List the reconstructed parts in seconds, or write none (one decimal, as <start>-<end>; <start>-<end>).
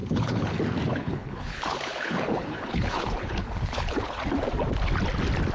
0.0-0.5; 0.9-4.2